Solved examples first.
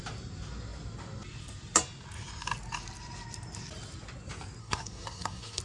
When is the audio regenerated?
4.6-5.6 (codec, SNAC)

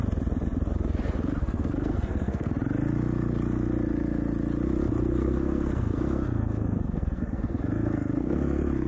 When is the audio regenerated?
1.4-2.5 (codec, SNAC); 5.1-8.9

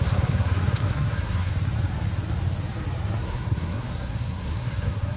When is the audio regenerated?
0.0-1.5 (codec, SNAC); 3.2-5.2

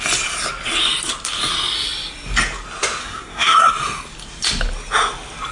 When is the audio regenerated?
3.0-3.7 (codec, SNAC)

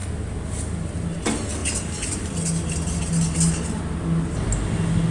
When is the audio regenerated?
none

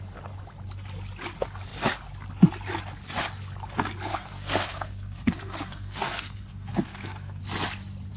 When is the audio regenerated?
4.1-7.4 (codec, SNAC)